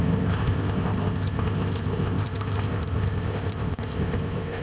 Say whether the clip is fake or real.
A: fake